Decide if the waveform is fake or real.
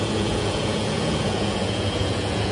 fake